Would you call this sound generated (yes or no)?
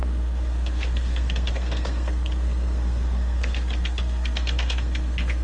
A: yes